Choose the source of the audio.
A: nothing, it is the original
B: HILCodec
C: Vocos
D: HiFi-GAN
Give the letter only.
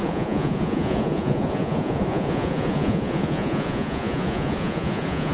C